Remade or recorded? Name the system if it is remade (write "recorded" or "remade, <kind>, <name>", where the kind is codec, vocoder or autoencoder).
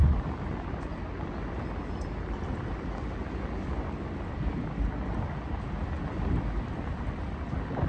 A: recorded